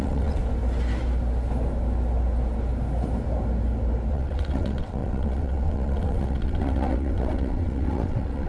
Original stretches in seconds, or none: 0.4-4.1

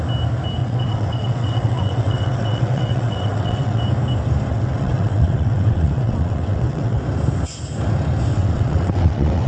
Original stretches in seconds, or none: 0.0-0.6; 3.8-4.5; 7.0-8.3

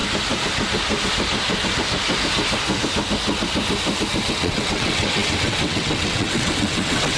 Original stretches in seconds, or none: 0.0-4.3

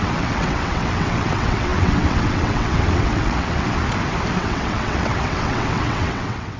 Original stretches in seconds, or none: 3.8-4.4

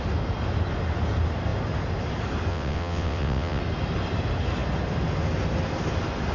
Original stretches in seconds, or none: 0.0-2.5; 3.6-6.3

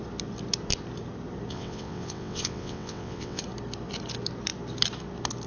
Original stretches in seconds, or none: 0.0-1.5; 3.4-5.5